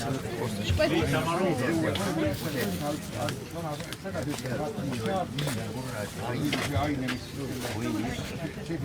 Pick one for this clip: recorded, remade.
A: recorded